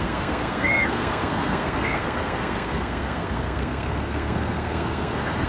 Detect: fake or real fake